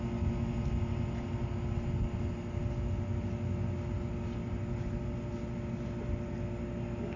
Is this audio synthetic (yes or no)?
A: no